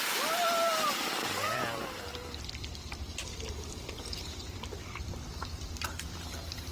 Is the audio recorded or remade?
remade